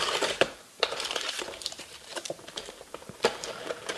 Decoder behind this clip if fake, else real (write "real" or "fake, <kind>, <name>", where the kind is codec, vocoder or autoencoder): fake, vocoder, BigVGAN v2